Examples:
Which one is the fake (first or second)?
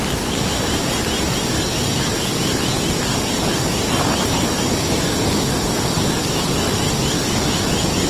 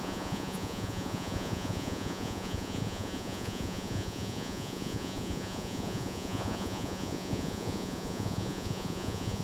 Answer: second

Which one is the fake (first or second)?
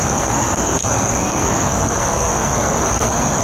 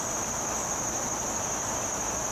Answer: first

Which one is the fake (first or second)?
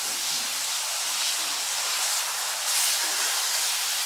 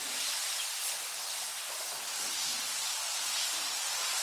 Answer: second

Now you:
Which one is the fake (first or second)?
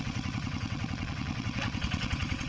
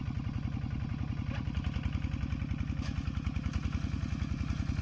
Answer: first